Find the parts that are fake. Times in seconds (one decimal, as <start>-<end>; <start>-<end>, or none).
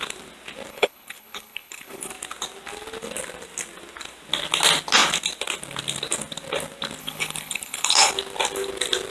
0.7-2.1; 7.0-8.1